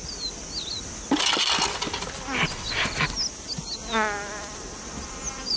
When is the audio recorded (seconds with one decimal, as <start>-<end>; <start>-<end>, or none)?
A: 0.0-5.6